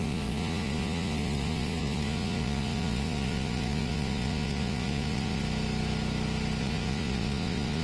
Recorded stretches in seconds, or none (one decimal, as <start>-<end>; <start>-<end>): 5.4-6.6